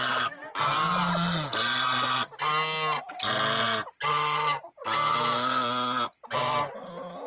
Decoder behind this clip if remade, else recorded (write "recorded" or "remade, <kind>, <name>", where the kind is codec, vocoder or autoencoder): recorded